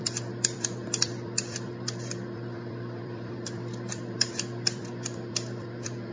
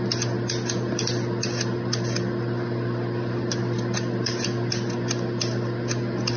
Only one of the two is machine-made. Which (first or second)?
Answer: first